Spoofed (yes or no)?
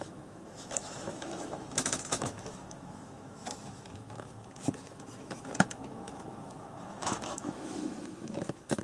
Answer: yes